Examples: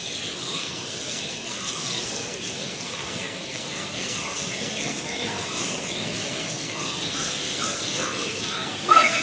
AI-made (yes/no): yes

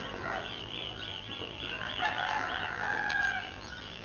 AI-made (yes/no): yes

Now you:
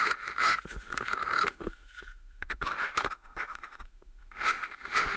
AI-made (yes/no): yes